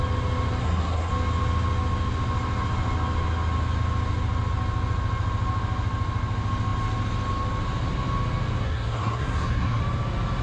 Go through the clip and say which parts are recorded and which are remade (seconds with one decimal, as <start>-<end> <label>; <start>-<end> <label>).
0.0-0.6 recorded; 0.6-1.1 remade; 1.1-8.6 recorded; 8.6-9.8 remade; 9.8-10.4 recorded